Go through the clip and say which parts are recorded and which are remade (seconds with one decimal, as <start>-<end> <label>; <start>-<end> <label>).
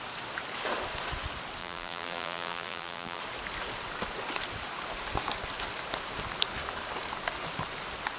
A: 0.0-1.6 recorded; 1.6-3.2 remade; 3.2-8.2 recorded